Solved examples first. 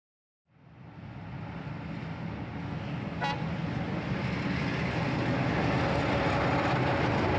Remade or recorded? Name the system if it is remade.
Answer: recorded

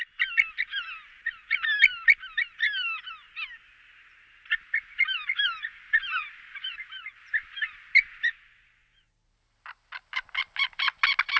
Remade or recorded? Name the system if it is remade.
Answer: recorded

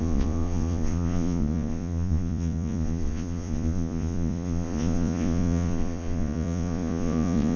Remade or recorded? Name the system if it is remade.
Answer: remade, vocoder, Vocos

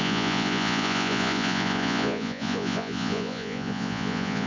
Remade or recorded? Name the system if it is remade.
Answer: remade, vocoder, Vocos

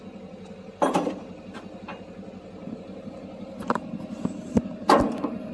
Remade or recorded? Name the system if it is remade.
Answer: recorded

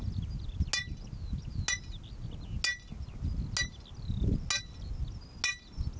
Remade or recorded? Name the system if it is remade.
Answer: recorded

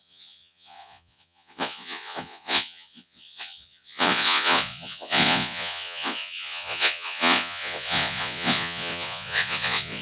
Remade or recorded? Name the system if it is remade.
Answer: remade, vocoder, Vocos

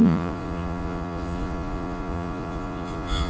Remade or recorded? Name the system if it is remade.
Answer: remade, vocoder, Vocos